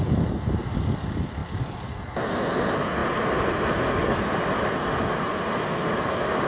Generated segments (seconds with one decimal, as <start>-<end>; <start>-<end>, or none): none